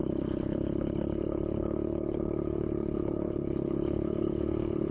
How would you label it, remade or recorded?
remade